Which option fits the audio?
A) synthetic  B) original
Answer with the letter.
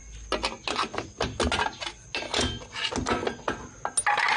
B